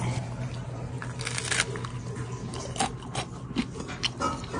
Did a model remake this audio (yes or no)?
no